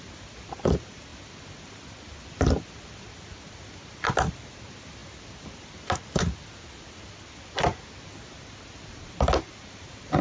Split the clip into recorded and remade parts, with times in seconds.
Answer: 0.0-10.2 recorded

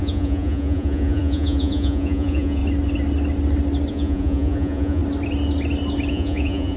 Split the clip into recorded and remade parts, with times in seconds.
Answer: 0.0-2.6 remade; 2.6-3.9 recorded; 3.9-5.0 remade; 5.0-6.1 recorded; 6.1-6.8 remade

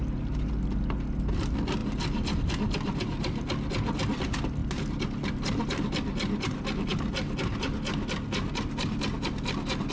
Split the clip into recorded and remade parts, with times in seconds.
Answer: 0.0-0.5 remade; 0.5-1.8 recorded; 1.8-2.4 remade; 2.4-4.6 recorded; 4.6-5.4 remade; 5.4-9.9 recorded

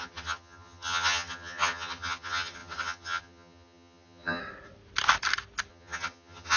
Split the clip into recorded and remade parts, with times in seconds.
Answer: 0.0-4.4 remade; 4.4-5.7 recorded; 5.7-6.6 remade